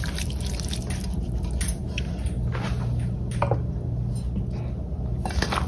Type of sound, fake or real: real